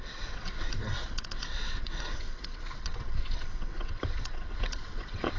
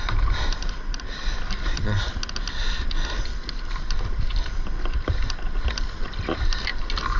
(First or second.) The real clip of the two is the second